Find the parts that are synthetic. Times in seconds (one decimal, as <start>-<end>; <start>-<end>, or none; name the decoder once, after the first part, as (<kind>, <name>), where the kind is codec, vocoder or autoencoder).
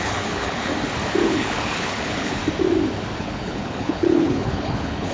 0.0-0.7 (codec, HILCodec); 1.2-2.4; 3.2-5.1